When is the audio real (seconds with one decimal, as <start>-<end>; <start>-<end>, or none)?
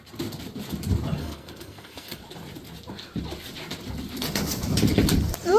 0.0-1.2; 2.2-5.6